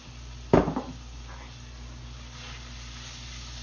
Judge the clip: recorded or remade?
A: recorded